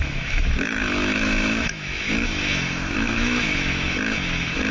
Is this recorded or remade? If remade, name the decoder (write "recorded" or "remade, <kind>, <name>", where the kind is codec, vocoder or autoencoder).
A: remade, autoencoder, DAC-VAE